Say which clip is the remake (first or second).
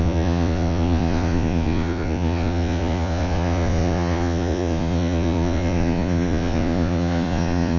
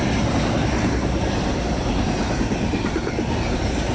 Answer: first